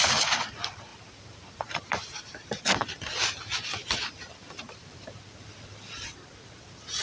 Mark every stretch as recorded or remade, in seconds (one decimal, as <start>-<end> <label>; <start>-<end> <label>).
0.0-0.9 recorded; 0.9-2.6 remade; 2.6-4.4 recorded; 4.4-7.0 remade